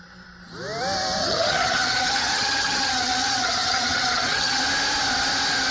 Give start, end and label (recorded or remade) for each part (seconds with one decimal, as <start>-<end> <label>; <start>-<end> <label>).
0.0-1.2 recorded; 1.2-4.6 remade; 4.6-5.7 recorded